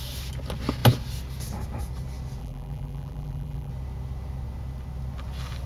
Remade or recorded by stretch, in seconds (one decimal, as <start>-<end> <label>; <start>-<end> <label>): 0.0-2.4 recorded; 2.4-3.7 remade; 3.7-5.7 recorded